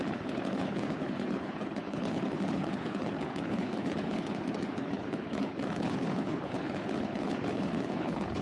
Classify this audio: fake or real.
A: fake